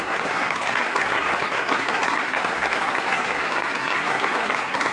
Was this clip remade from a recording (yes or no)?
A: yes